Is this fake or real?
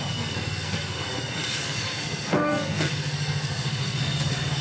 fake